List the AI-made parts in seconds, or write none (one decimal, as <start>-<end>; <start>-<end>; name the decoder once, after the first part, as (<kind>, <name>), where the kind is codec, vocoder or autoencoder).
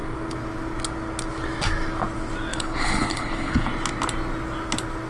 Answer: 2.5-3.7 (codec, HILCodec)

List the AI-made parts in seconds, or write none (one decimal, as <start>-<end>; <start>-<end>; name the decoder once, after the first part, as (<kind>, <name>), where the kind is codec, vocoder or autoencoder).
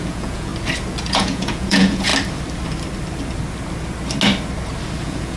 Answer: 0.0-0.5 (vocoder, Vocos); 1.1-2.1; 5.0-5.4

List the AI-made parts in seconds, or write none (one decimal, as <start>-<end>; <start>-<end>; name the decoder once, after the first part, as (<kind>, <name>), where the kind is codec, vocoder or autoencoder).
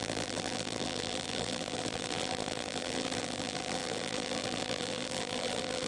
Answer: 0.0-5.9 (vocoder, BigVGAN v2)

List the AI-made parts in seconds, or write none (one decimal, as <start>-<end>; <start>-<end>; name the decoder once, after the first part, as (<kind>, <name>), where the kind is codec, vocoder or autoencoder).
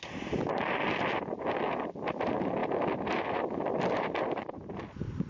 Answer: none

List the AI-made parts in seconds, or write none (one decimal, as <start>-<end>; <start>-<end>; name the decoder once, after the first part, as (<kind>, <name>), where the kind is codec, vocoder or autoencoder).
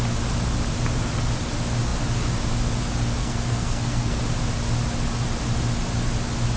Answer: 3.2-4.2 (codec, SNAC)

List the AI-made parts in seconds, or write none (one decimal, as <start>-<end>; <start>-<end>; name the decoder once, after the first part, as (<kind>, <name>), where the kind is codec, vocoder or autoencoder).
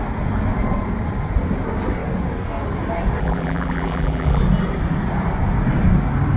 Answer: 3.2-4.4 (vocoder, BigVGAN v2)